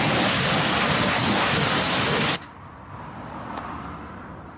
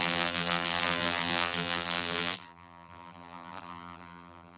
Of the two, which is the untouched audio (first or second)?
first